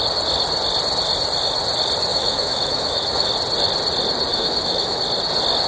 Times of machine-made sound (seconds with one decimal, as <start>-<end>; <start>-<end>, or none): 2.1-3.3; 4.3-5.0